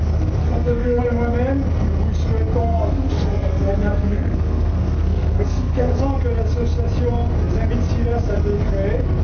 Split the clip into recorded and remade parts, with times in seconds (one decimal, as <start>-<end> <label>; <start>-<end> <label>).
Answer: 0.0-0.4 recorded; 0.4-1.0 remade; 1.0-2.6 recorded; 2.6-6.0 remade; 6.0-9.2 recorded

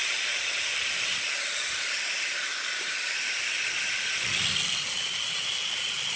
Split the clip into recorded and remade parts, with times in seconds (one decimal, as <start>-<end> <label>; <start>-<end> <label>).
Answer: 0.0-6.2 recorded

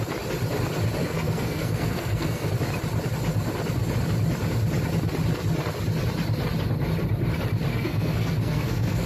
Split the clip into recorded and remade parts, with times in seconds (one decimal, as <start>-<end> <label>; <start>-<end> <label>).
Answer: 0.0-1.0 recorded; 1.0-2.5 remade; 2.5-7.7 recorded; 7.7-9.1 remade

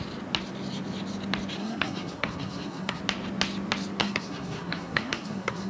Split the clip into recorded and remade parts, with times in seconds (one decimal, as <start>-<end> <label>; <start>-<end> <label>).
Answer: 0.0-1.6 recorded; 1.6-3.0 remade; 3.0-4.0 recorded; 4.0-5.7 remade

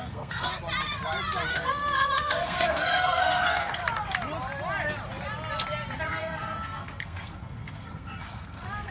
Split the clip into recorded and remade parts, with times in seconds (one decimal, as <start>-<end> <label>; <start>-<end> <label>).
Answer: 0.0-0.5 remade; 0.5-1.5 recorded; 1.5-3.8 remade; 3.8-6.0 recorded; 6.0-8.9 remade

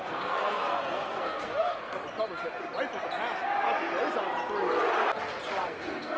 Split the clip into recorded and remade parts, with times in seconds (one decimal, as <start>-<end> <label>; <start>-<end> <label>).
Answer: 0.0-1.9 remade; 1.9-5.6 recorded; 5.6-6.2 remade